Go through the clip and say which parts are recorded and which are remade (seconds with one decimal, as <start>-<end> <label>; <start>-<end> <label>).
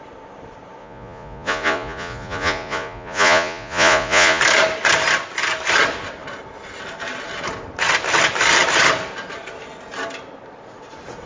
0.0-0.8 recorded; 0.8-4.4 remade; 4.4-11.3 recorded